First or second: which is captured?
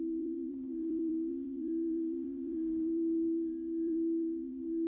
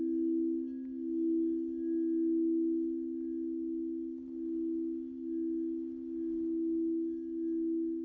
second